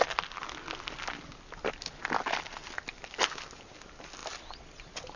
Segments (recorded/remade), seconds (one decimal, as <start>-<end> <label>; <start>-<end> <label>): 0.0-5.2 recorded